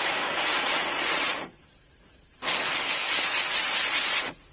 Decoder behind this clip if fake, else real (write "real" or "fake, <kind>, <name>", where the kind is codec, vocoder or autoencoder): real